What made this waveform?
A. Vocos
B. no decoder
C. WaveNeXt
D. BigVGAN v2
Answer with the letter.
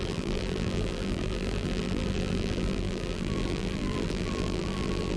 D